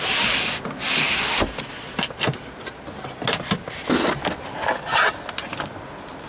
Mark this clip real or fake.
real